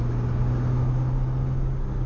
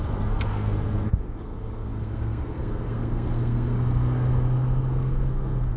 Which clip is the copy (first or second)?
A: second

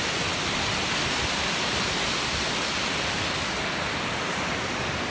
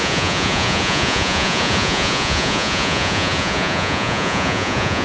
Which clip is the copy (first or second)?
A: second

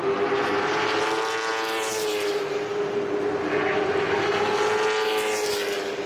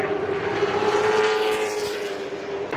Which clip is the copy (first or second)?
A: second